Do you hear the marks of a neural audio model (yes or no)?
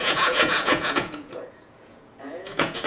yes